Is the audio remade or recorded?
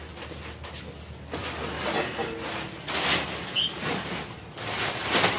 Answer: recorded